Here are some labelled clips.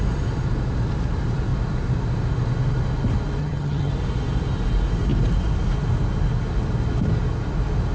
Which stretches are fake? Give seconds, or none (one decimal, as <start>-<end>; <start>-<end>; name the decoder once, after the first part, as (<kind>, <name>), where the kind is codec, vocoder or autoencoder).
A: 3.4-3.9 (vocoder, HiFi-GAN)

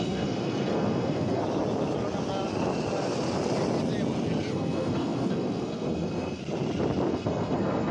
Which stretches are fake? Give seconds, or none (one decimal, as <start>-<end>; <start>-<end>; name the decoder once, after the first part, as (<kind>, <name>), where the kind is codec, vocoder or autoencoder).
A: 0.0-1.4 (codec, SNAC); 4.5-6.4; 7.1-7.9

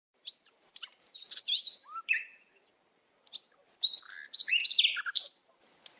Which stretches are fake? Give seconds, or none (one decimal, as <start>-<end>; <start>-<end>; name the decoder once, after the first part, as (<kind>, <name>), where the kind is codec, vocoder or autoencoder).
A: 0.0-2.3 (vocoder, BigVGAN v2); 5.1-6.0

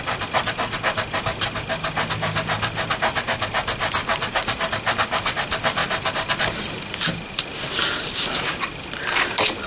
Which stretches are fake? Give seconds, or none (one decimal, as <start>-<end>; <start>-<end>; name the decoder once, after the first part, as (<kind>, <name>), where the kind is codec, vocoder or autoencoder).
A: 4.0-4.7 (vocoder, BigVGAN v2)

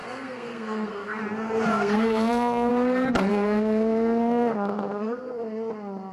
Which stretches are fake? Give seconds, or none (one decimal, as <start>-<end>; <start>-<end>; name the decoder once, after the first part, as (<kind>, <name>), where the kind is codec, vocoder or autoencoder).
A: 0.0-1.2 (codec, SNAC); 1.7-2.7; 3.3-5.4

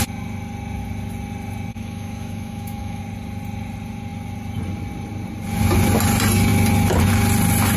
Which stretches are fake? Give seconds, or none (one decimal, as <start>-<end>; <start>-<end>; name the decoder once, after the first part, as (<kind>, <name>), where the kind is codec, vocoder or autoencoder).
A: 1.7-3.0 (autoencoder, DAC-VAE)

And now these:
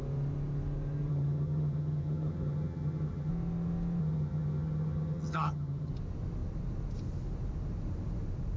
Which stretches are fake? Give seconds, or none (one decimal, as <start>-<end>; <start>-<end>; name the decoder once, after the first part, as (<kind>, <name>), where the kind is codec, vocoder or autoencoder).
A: 1.1-3.3 (vocoder, HiFi-GAN); 4.0-5.9

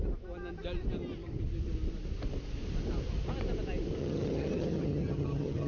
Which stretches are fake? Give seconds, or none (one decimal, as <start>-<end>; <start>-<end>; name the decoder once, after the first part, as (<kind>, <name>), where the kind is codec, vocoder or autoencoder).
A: 4.0-5.7 (vocoder, HiFi-GAN)